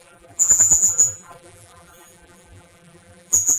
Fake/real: fake